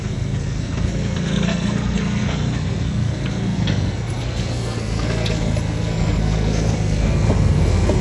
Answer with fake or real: fake